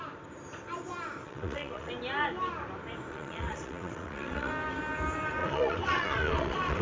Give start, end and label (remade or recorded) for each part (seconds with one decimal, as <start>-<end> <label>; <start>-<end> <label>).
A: 0.0-1.2 recorded; 1.2-1.9 remade; 1.9-3.1 recorded; 3.1-4.5 remade; 4.5-5.4 recorded; 5.4-6.8 remade